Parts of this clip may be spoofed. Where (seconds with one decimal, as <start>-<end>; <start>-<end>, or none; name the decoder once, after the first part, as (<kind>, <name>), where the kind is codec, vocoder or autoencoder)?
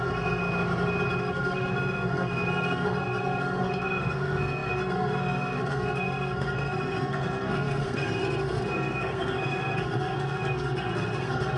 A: 0.0-0.4 (codec, SNAC); 1.2-11.6